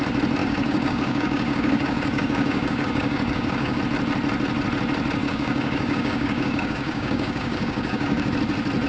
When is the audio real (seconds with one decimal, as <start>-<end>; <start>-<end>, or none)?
0.0-0.4; 3.8-5.2; 8.3-8.9